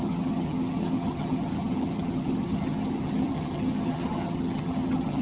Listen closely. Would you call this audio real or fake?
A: fake